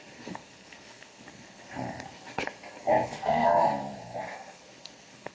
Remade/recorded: remade